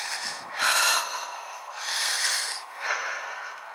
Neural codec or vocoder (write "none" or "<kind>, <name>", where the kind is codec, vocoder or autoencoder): codec, SNAC